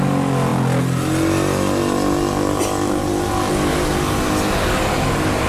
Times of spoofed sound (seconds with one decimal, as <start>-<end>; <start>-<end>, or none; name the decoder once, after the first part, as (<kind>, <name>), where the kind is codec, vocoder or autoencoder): none